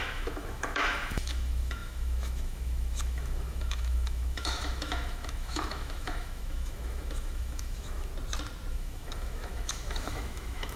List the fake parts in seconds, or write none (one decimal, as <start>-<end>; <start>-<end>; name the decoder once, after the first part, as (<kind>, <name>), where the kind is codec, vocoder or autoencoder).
0.0-8.1 (autoencoder, DAC-VAE); 8.7-10.8